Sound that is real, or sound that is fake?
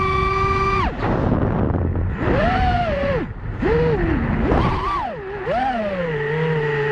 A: real